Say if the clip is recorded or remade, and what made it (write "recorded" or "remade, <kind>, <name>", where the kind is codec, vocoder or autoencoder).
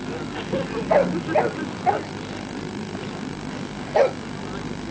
recorded